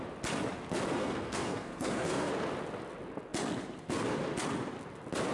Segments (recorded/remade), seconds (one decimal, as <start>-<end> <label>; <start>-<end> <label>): 0.0-1.0 recorded; 1.0-2.3 remade; 2.3-5.3 recorded